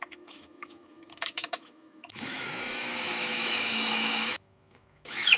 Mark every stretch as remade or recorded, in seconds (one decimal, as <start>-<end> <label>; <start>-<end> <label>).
0.0-5.4 remade